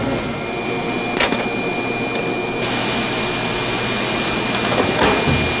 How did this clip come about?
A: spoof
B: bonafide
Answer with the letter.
B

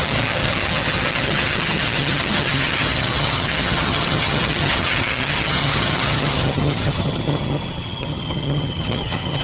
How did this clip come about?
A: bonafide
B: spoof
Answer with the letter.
B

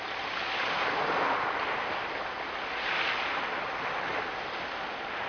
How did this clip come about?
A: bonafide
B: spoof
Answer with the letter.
A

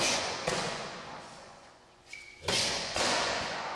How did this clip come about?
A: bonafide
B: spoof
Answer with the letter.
B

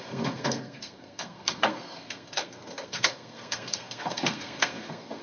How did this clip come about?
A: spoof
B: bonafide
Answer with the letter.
A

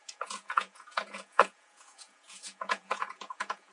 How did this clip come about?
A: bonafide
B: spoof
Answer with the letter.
B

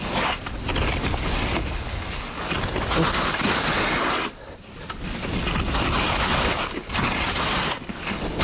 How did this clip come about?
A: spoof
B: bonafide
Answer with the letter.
B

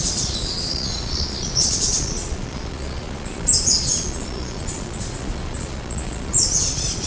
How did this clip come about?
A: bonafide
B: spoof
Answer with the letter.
B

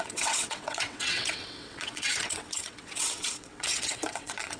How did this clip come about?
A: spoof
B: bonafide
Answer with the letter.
A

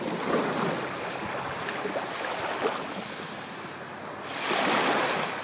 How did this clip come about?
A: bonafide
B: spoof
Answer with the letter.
A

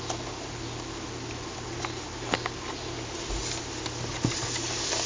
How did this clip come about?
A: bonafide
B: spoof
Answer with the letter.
A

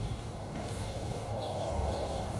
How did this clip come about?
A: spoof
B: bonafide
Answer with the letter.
A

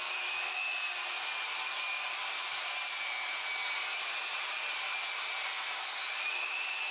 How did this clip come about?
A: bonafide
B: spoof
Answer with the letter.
A